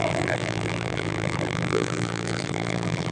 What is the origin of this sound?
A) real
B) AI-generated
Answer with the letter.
B